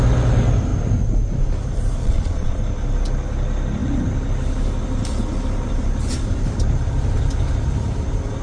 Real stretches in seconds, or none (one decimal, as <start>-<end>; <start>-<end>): 0.0-2.0; 2.6-8.4